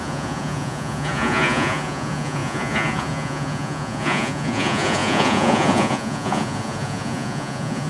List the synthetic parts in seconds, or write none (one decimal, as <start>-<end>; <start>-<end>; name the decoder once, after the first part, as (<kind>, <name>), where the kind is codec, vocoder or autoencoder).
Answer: 0.0-7.9 (vocoder, Vocos)